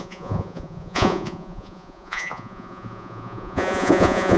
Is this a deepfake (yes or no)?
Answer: yes